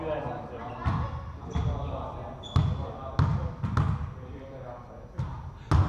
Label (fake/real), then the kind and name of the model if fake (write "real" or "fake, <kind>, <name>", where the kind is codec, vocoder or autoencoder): real